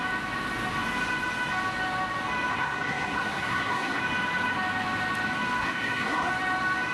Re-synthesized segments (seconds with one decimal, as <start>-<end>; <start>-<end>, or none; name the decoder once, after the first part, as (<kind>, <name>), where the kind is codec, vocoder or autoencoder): 2.5-4.0 (codec, SNAC); 5.6-6.3